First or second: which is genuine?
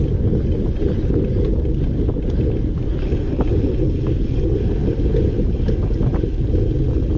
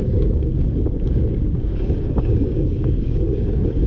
first